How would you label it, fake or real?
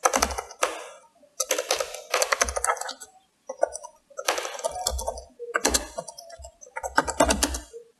real